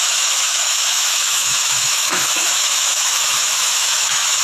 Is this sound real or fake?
fake